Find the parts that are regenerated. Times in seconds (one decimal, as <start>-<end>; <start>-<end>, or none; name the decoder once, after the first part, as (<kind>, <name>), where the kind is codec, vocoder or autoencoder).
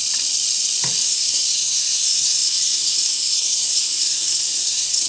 1.0-5.1 (codec, SNAC)